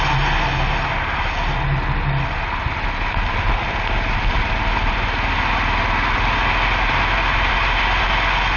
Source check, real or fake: real